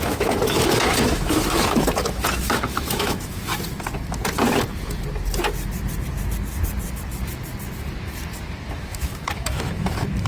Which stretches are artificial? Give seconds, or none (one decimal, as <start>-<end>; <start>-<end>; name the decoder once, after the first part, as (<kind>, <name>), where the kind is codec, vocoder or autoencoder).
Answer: 0.0-3.5 (autoencoder, DAC-VAE); 8.7-10.3